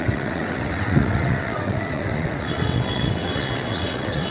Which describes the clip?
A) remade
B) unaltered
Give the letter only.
A